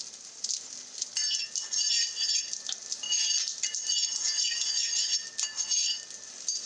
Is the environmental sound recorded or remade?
recorded